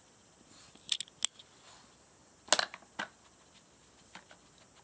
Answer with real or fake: real